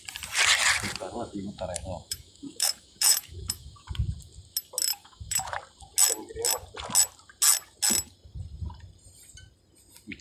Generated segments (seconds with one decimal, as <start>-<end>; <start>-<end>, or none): 1.0-3.9; 4.9-5.6